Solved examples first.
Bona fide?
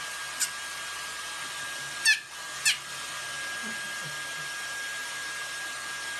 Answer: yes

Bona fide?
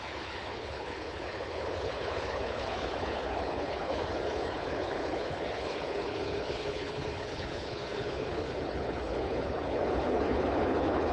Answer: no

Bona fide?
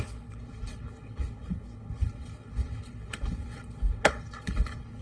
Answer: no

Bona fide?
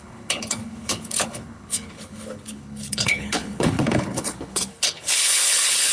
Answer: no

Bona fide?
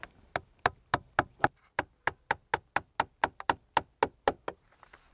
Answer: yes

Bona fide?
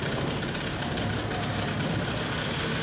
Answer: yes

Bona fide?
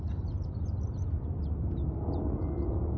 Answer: yes